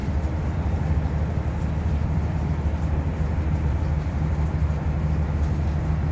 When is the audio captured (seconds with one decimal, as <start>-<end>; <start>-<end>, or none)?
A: 0.0-6.1